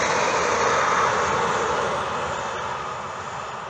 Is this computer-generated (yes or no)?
no